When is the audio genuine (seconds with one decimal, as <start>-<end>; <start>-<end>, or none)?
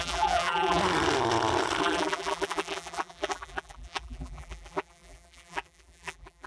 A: 0.8-1.8